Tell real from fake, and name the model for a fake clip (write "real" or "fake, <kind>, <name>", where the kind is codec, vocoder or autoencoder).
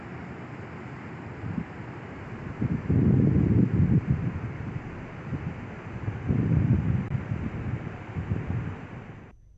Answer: fake, vocoder, BigVGAN v2